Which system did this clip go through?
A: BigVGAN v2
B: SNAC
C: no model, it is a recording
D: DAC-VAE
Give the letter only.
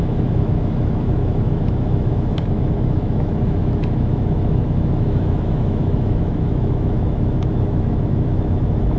D